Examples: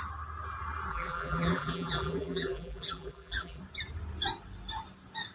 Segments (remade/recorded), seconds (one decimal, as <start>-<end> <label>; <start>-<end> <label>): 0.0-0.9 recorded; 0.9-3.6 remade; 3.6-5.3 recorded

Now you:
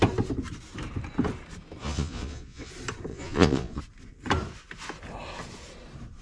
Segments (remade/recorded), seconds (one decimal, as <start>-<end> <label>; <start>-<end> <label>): 0.0-1.8 recorded; 1.8-2.7 remade; 2.7-3.1 recorded; 3.1-3.8 remade; 3.8-6.2 recorded

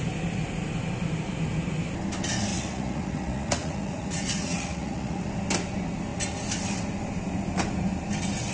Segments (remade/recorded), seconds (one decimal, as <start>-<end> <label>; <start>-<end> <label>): 0.0-2.5 recorded; 2.5-5.3 remade; 5.3-8.5 recorded